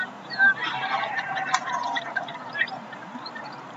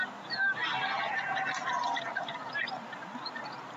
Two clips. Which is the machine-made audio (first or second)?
first